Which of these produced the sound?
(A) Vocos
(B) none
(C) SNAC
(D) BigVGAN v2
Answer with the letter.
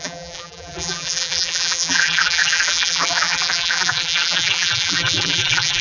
D